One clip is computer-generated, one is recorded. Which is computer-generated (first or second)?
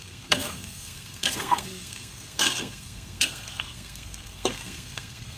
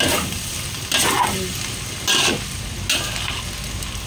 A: first